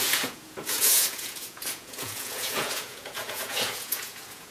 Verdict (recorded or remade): remade